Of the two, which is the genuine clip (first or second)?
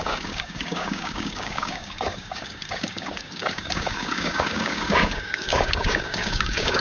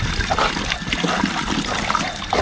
second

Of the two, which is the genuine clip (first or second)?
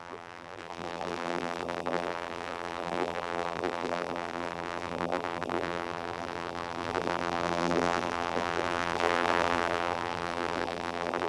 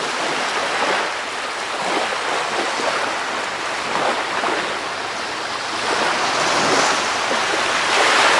second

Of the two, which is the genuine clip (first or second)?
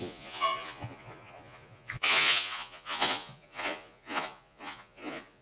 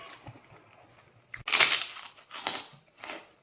second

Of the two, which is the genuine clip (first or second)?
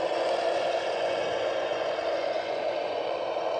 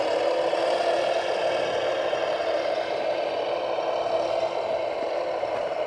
second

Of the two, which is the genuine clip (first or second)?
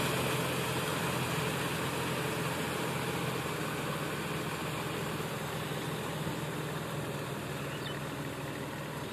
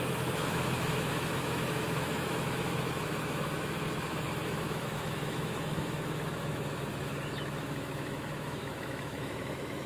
first